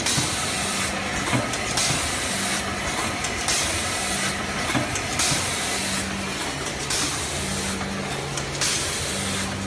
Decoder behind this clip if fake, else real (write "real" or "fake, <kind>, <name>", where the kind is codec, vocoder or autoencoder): real